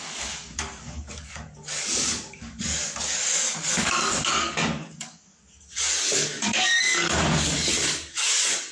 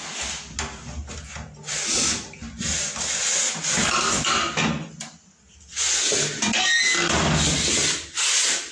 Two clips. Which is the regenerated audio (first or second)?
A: first